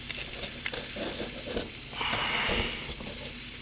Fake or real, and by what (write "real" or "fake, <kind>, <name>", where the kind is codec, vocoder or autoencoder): real